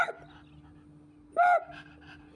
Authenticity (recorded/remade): recorded